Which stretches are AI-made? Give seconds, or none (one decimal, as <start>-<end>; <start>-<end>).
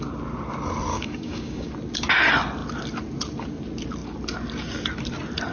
0.9-1.7